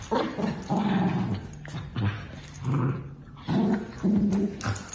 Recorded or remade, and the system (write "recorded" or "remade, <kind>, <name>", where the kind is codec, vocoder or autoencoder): recorded